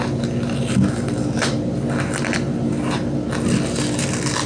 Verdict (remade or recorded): recorded